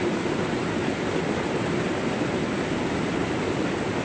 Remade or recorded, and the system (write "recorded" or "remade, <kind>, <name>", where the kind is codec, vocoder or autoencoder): recorded